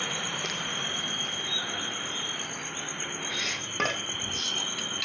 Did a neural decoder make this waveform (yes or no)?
no